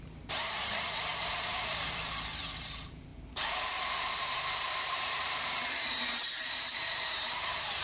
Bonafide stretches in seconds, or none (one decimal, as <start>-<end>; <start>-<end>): none